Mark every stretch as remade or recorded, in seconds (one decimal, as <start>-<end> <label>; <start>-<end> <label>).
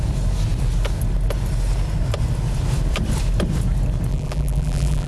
0.0-4.1 recorded; 4.1-5.1 remade